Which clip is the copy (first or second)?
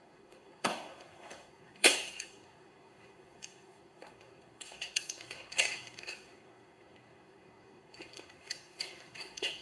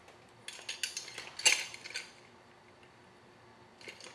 first